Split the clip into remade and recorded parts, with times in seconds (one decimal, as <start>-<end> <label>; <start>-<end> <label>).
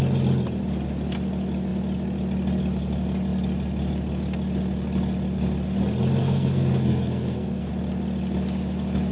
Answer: 0.0-6.2 recorded; 6.2-7.7 remade; 7.7-9.1 recorded